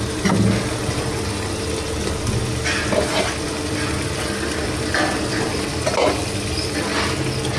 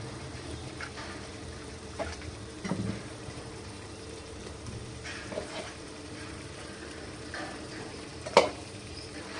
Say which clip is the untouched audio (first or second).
first